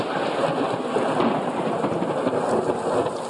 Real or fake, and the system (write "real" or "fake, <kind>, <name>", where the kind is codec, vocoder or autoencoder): real